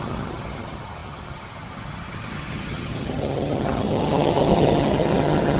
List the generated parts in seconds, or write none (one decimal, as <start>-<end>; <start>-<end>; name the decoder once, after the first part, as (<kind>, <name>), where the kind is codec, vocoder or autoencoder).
0.0-5.6 (vocoder, HiFi-GAN)

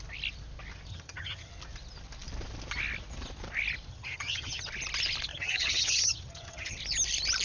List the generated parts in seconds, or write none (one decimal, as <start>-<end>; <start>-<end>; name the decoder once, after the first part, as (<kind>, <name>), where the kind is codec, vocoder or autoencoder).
0.9-1.5 (vocoder, HiFi-GAN); 3.9-4.7; 5.3-6.8

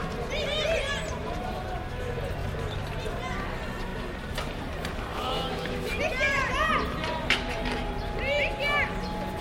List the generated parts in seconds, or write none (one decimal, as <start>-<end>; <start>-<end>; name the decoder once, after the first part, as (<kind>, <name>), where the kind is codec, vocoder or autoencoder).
5.1-6.0 (autoencoder, DAC-VAE)

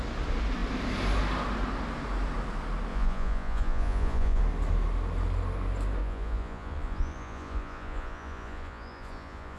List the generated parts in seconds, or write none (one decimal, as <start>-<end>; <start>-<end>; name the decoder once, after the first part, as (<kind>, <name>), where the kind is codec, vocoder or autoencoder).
2.9-4.4 (vocoder, Vocos); 6.0-9.6

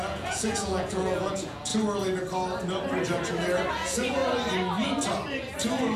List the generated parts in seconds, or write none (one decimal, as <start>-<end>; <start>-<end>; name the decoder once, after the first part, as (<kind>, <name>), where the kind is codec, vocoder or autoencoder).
0.0-1.7 (vocoder, Vocos); 3.7-4.2

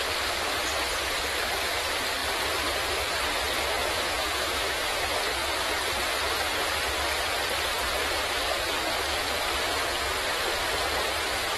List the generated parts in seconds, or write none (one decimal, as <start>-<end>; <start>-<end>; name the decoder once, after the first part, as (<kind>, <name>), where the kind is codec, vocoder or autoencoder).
3.8-5.0 (autoencoder, DAC-VAE)

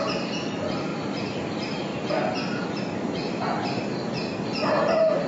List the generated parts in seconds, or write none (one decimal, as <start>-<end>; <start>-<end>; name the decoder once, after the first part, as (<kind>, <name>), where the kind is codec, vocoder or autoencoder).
0.0-1.9 (vocoder, BigVGAN v2)